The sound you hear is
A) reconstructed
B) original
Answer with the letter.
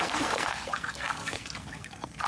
A